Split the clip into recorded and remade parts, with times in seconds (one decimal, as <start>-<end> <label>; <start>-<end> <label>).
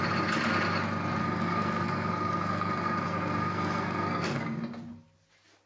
0.0-1.2 recorded; 1.2-4.6 remade; 4.6-5.7 recorded